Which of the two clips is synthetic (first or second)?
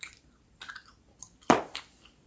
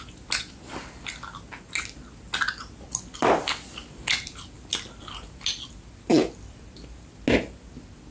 first